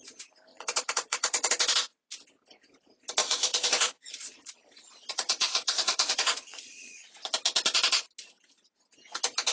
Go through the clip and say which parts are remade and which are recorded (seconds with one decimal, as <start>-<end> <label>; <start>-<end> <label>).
0.0-0.5 recorded; 0.5-1.5 remade; 1.5-3.2 recorded; 3.2-4.6 remade; 4.6-5.1 recorded; 5.1-7.1 remade; 7.1-9.5 recorded